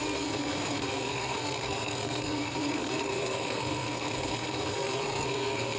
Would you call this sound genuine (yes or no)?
no